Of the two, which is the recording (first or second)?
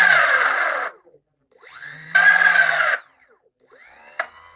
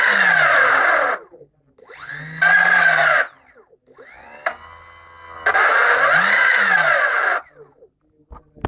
second